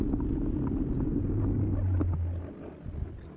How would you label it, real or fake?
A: real